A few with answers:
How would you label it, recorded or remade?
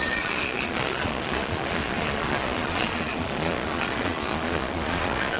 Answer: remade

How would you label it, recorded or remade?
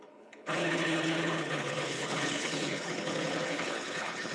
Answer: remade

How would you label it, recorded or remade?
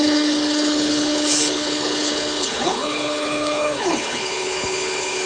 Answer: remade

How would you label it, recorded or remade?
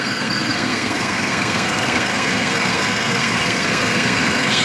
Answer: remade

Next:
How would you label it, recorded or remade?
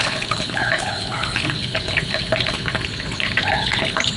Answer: remade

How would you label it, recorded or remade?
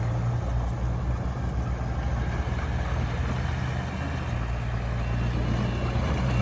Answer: recorded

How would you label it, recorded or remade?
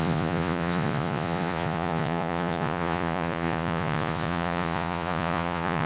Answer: remade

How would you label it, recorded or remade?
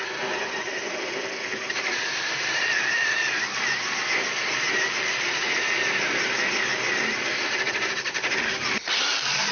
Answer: remade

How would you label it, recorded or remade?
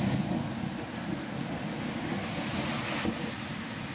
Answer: recorded